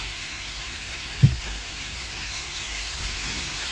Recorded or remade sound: remade